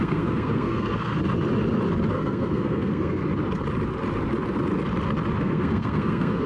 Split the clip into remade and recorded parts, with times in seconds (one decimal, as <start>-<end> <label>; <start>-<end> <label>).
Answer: 0.0-1.1 remade; 1.1-2.1 recorded; 2.1-3.2 remade; 3.2-5.4 recorded; 5.4-6.5 remade